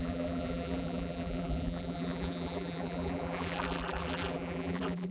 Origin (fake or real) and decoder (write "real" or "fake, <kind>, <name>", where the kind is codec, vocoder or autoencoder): fake, vocoder, BigVGAN v2